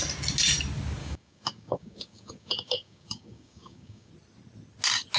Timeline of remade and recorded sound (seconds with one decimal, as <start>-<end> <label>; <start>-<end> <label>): 0.0-1.0 recorded; 1.0-4.1 remade; 4.1-5.2 recorded